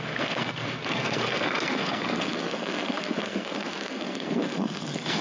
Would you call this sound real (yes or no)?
no